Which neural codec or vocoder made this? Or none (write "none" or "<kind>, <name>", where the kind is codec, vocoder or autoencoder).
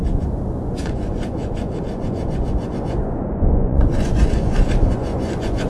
vocoder, Vocos